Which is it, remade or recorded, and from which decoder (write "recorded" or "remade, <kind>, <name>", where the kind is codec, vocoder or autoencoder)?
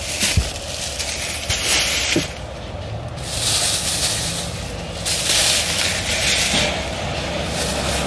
recorded